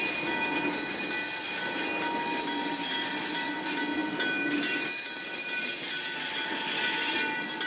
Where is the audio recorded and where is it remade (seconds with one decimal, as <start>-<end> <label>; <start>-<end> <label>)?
0.0-7.7 recorded